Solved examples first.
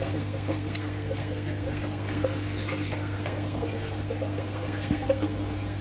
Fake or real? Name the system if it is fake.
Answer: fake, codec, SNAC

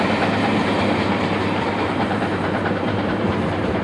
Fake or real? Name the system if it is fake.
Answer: fake, vocoder, BigVGAN v2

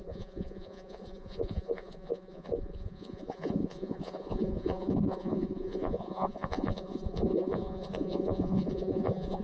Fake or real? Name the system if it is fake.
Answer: fake, vocoder, Vocos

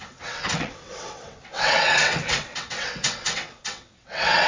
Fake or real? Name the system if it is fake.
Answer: fake, vocoder, WaveNeXt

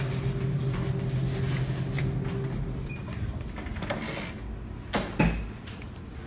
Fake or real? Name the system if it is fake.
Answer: real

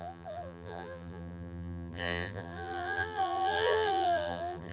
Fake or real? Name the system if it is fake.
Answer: fake, vocoder, BigVGAN v2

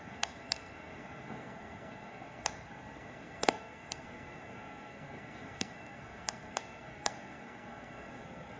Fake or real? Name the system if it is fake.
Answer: fake, codec, SNAC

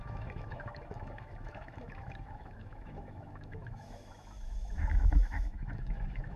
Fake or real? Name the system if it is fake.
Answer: fake, autoencoder, DAC-VAE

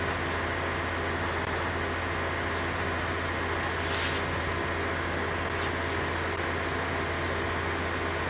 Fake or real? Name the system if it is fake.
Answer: real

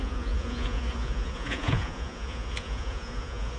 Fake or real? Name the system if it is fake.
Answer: fake, vocoder, Vocos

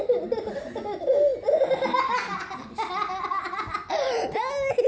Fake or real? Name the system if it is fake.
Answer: real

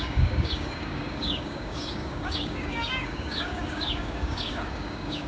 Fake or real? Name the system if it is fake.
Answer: fake, codec, DAC